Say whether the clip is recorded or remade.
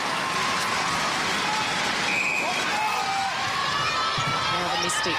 recorded